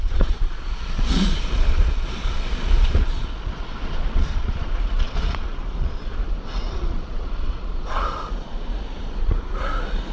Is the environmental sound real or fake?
fake